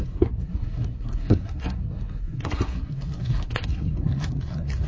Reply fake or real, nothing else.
fake